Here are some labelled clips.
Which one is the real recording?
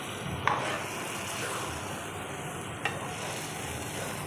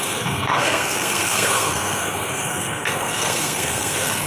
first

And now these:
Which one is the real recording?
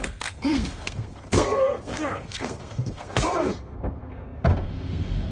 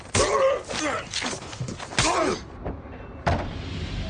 second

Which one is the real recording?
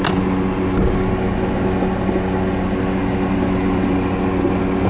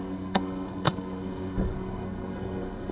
first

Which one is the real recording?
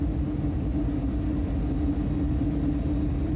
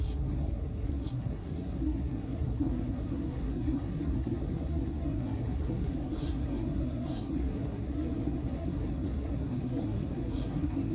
first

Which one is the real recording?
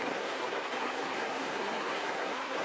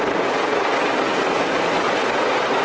second